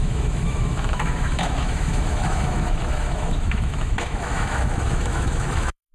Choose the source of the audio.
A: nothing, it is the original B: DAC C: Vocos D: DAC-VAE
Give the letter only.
D